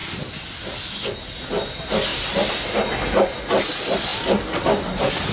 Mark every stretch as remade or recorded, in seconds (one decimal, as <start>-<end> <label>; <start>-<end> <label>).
0.0-5.3 recorded